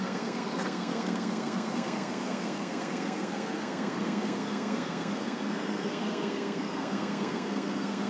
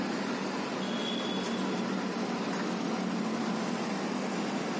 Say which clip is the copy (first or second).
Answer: first